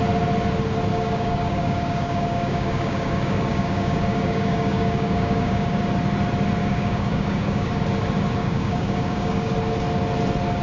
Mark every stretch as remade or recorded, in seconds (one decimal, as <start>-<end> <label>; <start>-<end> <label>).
0.0-0.9 recorded; 0.9-5.8 remade; 5.8-6.6 recorded; 6.6-7.8 remade; 7.8-8.4 recorded; 8.4-9.5 remade; 9.5-10.6 recorded